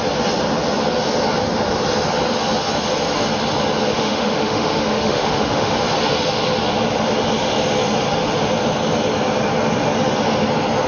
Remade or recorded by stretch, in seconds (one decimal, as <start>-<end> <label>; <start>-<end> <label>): 0.0-3.9 recorded; 3.9-5.7 remade; 5.7-10.9 recorded